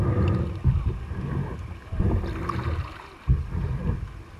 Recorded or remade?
recorded